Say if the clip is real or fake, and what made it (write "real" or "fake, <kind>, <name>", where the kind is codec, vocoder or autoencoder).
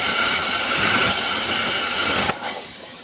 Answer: fake, vocoder, HiFi-GAN